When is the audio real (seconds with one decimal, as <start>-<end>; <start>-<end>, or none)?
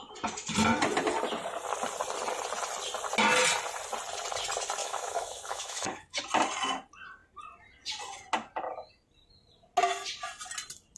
0.0-4.8; 6.2-11.0